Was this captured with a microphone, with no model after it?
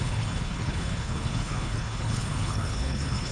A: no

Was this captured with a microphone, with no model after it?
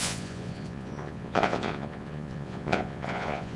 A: no